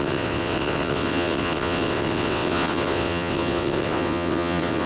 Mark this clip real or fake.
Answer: fake